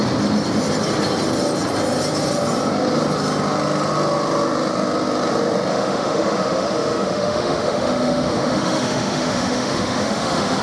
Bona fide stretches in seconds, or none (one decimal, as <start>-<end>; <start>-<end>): 0.0-5.7